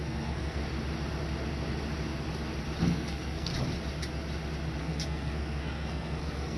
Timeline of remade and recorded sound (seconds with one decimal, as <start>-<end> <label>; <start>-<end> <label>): 0.0-0.6 remade; 0.6-2.8 recorded; 2.8-3.5 remade; 3.5-4.8 recorded; 4.8-6.6 remade

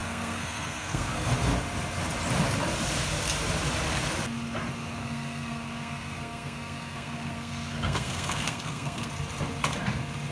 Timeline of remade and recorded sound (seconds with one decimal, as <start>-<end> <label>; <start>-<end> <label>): 0.0-1.3 remade; 1.3-5.0 recorded; 5.0-9.1 remade; 9.1-10.3 recorded

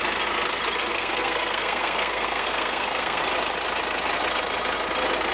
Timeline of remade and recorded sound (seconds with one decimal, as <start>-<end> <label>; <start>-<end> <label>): 0.0-0.9 recorded; 0.9-3.2 remade; 3.2-5.3 recorded

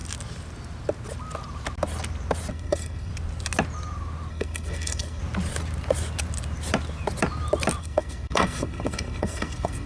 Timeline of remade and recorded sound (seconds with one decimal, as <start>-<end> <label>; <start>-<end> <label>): 0.0-2.5 recorded; 2.5-3.1 remade; 3.1-4.3 recorded; 4.3-5.2 remade; 5.2-7.8 recorded; 7.8-9.9 remade

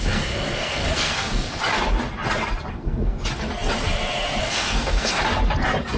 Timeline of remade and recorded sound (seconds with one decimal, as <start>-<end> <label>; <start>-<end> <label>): 0.0-1.6 remade; 1.6-2.7 recorded; 2.7-3.2 remade; 3.2-4.4 recorded; 4.4-5.2 remade; 5.2-6.0 recorded